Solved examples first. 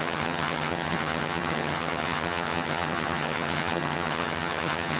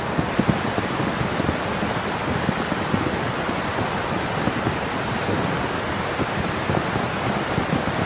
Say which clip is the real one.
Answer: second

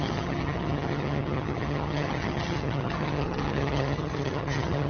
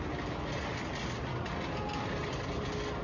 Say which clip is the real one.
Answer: second